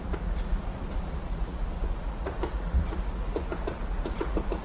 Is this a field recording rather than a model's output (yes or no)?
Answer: no